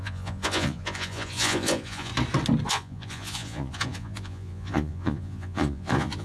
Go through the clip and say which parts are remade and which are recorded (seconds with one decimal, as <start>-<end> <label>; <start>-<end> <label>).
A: 0.0-2.1 remade; 2.1-2.7 recorded; 2.7-6.2 remade

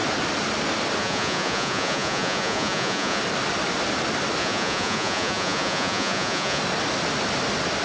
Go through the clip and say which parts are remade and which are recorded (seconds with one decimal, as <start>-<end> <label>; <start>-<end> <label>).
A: 0.0-1.0 recorded; 1.0-3.2 remade; 3.2-4.4 recorded; 4.4-6.6 remade; 6.6-7.8 recorded

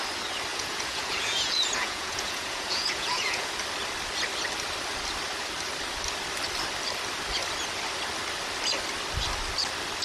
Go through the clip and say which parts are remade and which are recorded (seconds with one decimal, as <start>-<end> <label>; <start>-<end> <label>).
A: 0.0-0.5 recorded; 0.5-3.6 remade; 3.6-10.0 recorded

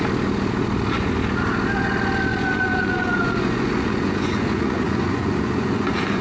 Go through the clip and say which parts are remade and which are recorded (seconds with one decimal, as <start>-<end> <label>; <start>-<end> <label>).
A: 0.0-2.3 recorded; 2.3-6.2 remade

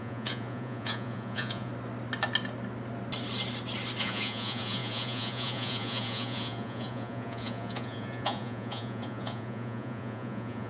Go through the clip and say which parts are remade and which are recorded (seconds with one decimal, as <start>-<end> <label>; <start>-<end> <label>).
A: 0.0-1.7 remade; 1.7-4.0 recorded; 4.0-10.7 remade